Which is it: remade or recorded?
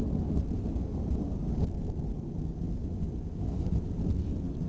recorded